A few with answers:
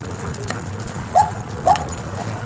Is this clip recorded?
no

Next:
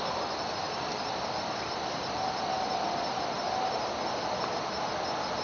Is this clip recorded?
yes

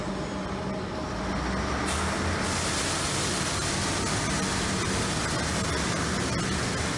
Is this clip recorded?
yes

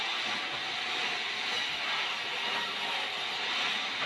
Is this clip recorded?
yes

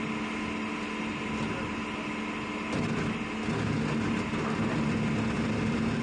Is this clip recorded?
yes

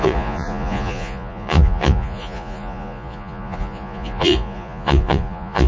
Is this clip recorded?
no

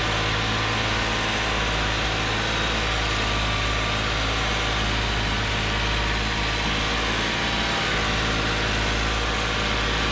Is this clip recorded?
yes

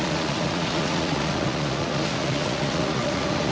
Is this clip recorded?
no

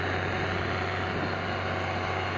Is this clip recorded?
yes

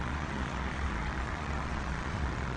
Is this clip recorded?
no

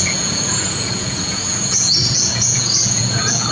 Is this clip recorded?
no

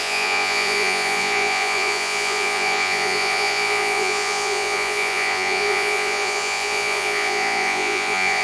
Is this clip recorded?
no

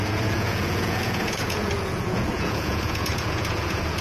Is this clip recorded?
no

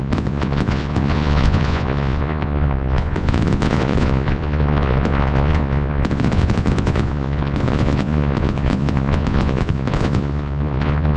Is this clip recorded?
no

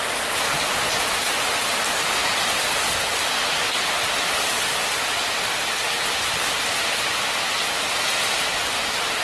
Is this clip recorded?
yes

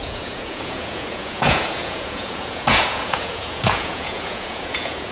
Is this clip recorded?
no